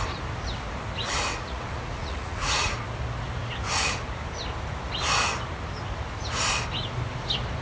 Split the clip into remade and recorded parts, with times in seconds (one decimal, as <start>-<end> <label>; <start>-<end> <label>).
0.0-1.1 recorded; 1.1-2.7 remade; 2.7-7.6 recorded